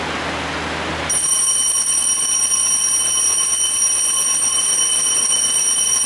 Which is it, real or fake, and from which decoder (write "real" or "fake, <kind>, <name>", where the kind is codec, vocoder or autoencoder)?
real